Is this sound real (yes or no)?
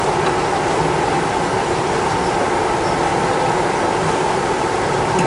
no